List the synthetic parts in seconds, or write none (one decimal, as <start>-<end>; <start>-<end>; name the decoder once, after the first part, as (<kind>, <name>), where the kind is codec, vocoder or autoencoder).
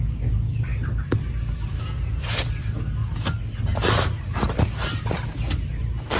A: none